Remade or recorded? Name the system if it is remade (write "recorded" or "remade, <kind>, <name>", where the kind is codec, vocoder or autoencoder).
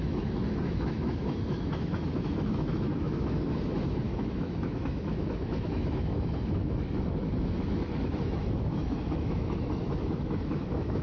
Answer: remade, autoencoder, DAC-VAE